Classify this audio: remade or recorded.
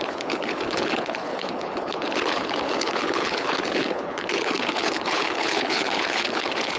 remade